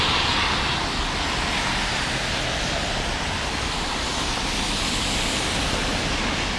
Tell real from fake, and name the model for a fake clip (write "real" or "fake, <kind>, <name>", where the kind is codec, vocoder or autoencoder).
real